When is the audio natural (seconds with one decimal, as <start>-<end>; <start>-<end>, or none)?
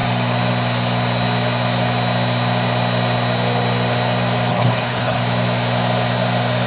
0.0-4.5; 5.2-6.7